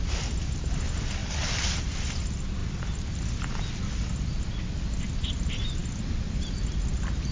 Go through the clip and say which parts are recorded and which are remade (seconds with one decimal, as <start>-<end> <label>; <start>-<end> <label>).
0.0-1.2 recorded; 1.2-1.7 remade; 1.7-5.8 recorded; 5.8-7.3 remade